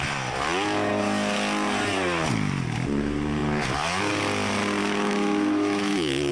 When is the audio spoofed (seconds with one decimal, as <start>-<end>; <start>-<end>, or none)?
4.8-6.3